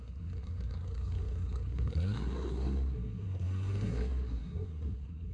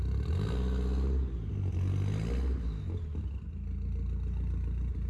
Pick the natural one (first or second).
second